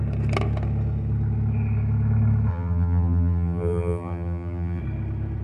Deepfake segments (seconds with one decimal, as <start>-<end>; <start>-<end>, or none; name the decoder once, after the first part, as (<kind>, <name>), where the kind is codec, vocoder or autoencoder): 2.5-4.8 (vocoder, BigVGAN v2)